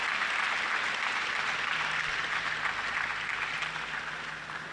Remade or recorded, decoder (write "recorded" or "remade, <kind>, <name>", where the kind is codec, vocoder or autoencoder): recorded